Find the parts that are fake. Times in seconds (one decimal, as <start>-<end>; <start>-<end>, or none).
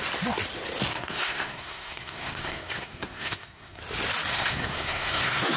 0.9-3.8; 4.3-5.6